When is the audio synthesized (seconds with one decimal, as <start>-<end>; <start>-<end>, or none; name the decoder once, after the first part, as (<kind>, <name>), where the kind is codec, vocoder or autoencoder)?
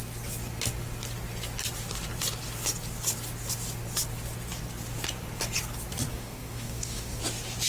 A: 6.1-7.2 (codec, DAC)